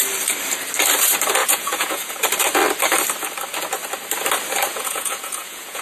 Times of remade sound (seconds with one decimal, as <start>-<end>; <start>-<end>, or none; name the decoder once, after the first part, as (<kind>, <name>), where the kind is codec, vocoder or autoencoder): 1.4-2.2 (vocoder, Vocos); 4.7-5.8